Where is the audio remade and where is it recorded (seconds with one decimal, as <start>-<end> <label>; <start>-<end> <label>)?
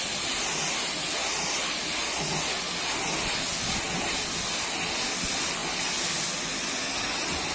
0.0-7.5 recorded